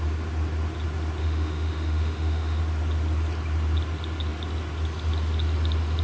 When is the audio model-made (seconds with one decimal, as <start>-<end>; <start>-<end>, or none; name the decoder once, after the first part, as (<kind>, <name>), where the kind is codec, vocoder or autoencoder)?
1.2-2.6 (autoencoder, DAC-VAE)